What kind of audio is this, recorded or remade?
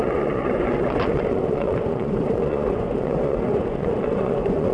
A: remade